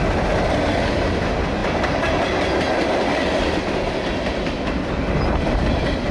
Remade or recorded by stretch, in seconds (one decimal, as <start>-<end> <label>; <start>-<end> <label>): 0.0-6.1 recorded